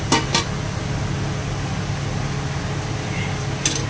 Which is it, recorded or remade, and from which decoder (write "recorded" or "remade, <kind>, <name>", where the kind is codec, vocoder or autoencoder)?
recorded